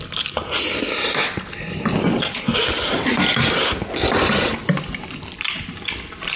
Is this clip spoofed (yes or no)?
no